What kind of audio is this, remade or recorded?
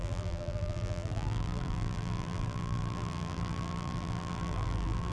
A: remade